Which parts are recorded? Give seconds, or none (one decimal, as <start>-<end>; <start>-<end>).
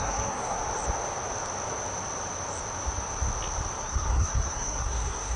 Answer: 0.6-3.8